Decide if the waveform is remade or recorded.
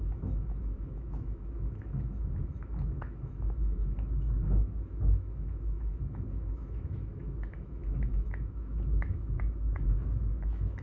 remade